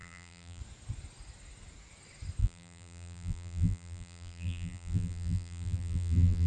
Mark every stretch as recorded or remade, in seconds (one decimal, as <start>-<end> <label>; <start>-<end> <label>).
0.0-0.6 remade; 0.6-2.4 recorded; 2.4-6.5 remade